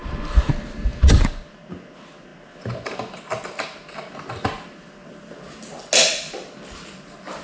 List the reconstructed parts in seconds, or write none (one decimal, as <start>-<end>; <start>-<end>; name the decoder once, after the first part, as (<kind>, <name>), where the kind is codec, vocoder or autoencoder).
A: none